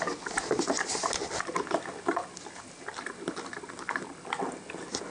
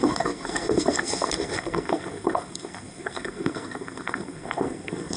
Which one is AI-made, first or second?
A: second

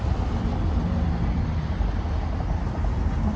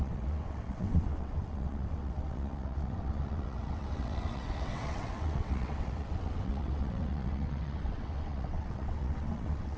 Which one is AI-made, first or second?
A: second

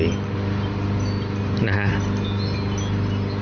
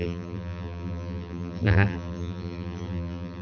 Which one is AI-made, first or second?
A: second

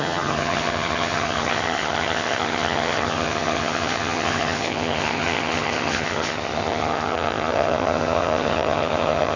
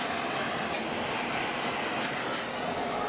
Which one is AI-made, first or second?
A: first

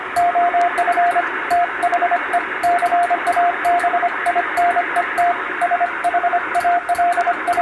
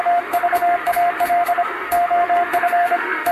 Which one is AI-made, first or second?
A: second